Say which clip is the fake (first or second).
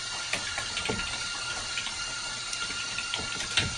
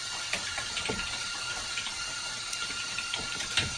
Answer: second